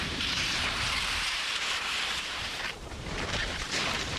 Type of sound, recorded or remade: remade